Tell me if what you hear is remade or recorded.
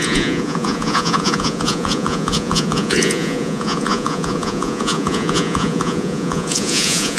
remade